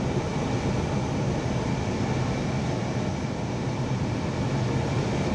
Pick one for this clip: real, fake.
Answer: real